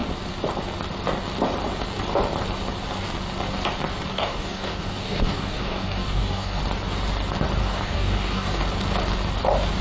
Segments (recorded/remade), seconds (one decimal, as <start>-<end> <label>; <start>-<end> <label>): 0.0-4.1 recorded; 4.1-6.6 remade; 6.6-7.6 recorded; 7.6-8.6 remade; 8.6-9.8 recorded

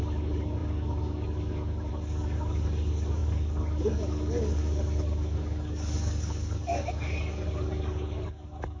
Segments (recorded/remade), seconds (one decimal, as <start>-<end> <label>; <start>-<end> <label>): 0.0-8.8 remade

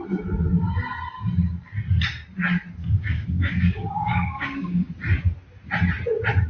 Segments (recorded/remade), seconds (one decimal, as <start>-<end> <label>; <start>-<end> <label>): 0.0-2.8 recorded; 2.8-4.9 remade; 4.9-6.5 recorded